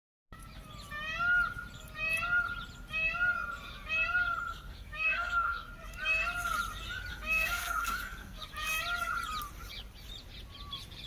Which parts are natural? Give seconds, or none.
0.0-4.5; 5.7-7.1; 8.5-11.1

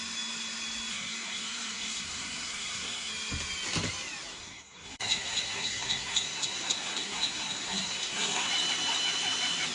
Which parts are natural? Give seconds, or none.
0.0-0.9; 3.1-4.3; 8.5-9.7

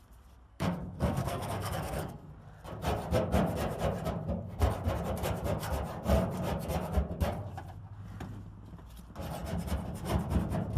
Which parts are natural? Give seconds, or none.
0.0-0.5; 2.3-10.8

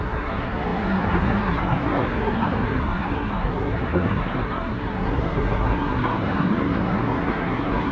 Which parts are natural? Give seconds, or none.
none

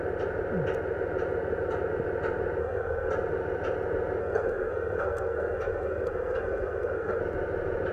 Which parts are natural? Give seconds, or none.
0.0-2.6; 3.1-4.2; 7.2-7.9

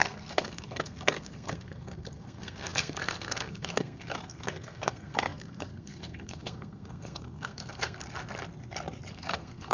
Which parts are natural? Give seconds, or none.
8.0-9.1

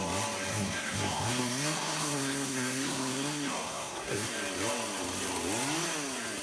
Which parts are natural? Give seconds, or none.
0.0-0.5; 4.3-6.4

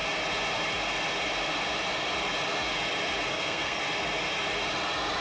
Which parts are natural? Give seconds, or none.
0.0-3.3; 3.8-5.2